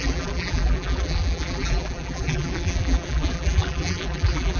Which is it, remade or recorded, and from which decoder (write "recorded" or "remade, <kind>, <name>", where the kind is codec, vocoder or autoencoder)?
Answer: remade, vocoder, BigVGAN v2